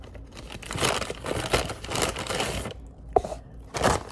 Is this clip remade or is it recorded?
recorded